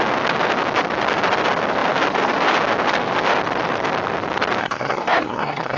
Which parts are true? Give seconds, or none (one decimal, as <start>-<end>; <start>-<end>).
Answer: 0.0-4.6